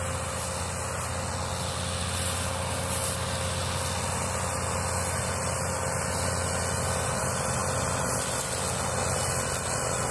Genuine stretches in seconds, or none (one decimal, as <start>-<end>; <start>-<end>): 0.0-10.1